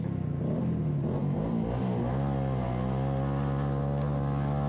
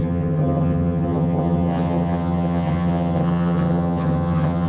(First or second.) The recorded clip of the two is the first